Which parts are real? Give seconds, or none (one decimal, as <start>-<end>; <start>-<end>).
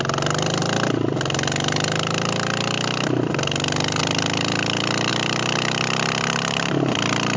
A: 0.0-7.4